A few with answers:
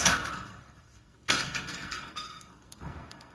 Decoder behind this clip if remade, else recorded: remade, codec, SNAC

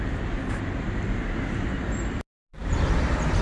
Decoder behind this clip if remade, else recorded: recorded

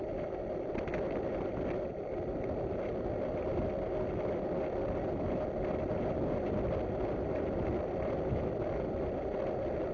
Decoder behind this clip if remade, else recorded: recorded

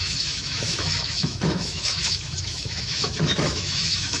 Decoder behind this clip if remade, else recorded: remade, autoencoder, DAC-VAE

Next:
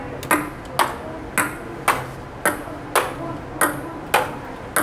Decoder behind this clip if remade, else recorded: recorded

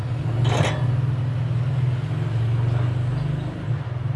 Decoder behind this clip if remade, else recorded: recorded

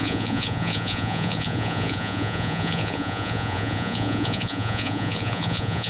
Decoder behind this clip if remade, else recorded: remade, vocoder, Vocos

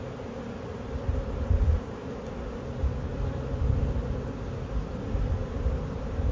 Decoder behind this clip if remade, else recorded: recorded